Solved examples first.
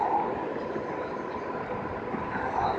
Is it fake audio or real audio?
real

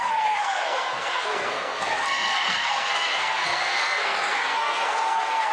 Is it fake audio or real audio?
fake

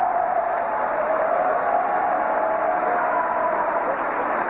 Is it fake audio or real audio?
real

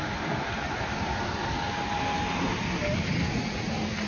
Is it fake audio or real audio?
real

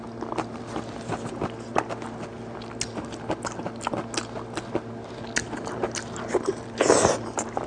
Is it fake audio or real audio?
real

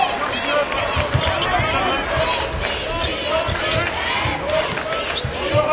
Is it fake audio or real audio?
real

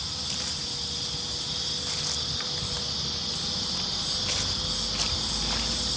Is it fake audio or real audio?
real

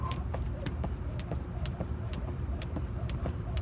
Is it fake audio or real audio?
fake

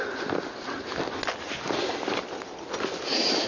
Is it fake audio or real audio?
real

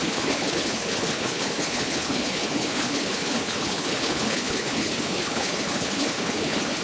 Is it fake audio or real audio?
fake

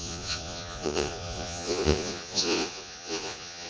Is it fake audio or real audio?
fake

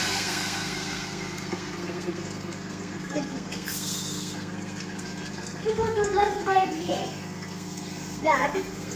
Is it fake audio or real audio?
fake